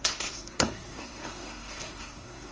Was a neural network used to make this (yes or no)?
yes